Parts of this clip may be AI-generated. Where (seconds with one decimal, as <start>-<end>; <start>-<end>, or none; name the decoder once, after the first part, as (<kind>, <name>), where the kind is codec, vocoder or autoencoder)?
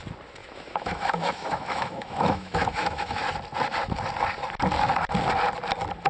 0.4-3.2 (autoencoder, DAC-VAE)